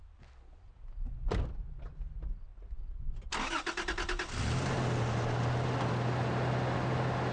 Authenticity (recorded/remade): recorded